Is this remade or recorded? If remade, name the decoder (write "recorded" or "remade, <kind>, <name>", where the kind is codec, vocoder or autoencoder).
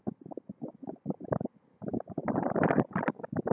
recorded